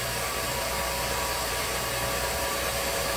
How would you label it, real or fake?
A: fake